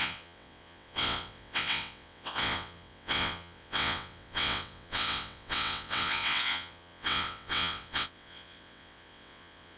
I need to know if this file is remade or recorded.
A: remade